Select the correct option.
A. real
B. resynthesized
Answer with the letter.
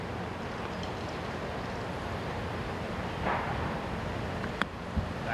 A